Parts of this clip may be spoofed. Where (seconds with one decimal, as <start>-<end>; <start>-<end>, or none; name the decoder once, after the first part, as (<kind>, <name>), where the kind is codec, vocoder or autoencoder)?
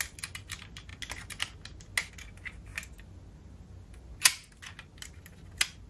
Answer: none